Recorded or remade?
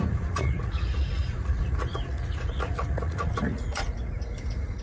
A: remade